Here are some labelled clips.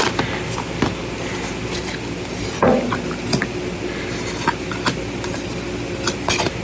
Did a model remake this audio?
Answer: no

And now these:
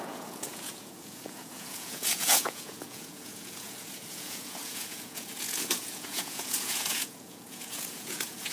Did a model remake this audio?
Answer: yes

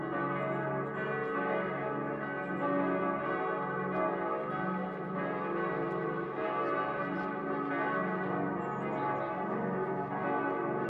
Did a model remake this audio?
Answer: no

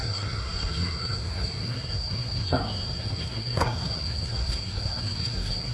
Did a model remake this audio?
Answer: yes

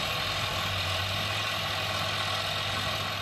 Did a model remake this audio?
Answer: no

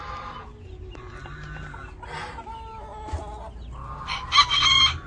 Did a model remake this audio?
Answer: no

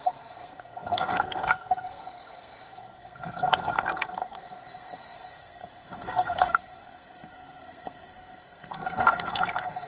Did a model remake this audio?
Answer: yes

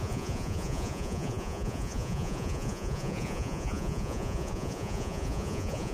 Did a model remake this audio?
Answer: yes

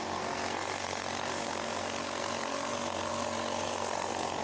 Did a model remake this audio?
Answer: yes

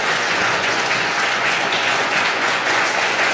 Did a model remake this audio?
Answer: yes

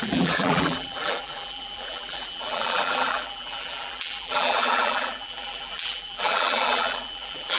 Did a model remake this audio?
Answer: yes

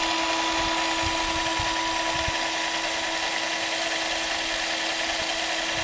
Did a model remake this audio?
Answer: no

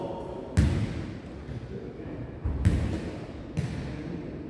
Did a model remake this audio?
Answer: no